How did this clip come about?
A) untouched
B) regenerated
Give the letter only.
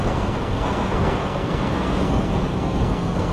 B